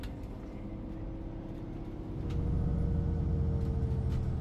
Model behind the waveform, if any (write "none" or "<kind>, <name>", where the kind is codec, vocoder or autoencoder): none